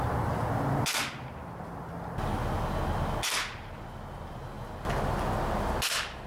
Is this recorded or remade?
recorded